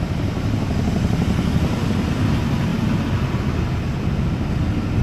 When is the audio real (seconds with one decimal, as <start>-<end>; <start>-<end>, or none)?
0.0-5.0